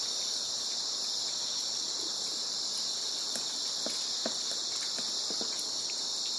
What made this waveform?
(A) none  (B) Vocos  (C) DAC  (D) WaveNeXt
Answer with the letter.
A